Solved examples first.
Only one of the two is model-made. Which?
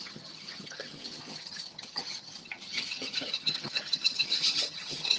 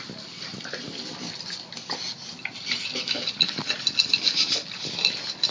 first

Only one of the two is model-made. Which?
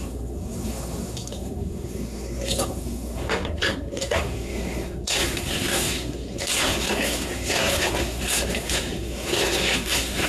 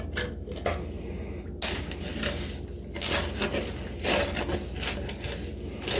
first